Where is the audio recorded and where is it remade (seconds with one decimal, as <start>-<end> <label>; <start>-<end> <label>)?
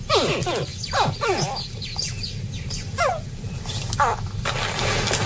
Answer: 0.0-5.3 recorded